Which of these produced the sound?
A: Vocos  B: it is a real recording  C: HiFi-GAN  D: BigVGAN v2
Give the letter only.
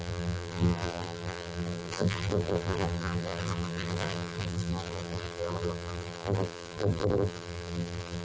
D